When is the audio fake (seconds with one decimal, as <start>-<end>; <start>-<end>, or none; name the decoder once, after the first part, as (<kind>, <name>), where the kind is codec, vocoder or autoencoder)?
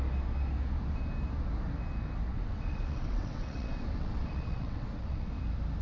2.3-5.3 (vocoder, WaveNeXt)